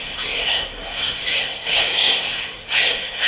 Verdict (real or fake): fake